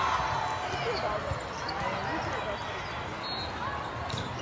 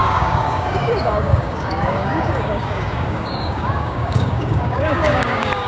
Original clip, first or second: first